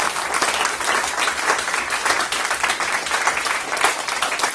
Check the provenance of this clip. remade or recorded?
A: recorded